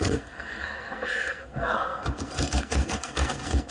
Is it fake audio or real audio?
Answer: fake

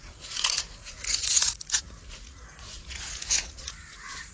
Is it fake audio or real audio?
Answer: fake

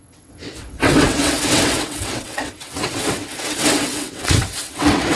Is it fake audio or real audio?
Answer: fake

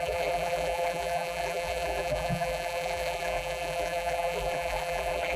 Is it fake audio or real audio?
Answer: fake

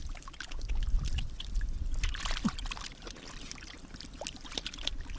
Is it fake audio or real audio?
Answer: fake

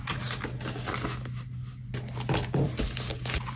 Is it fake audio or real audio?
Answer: real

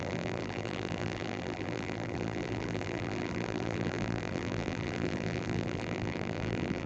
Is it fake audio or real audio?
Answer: fake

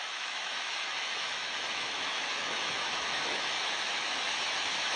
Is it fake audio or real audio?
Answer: fake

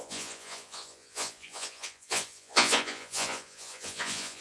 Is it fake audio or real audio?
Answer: fake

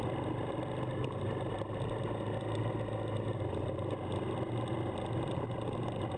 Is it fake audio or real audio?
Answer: real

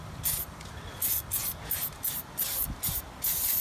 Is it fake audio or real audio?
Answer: real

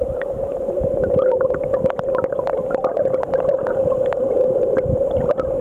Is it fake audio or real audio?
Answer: real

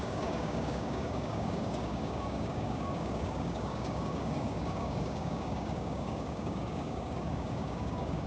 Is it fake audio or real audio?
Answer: fake